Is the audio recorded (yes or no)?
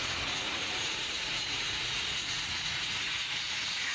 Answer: no